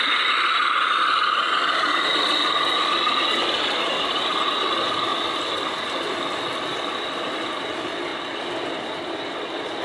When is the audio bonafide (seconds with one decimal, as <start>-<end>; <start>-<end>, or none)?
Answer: 0.0-9.8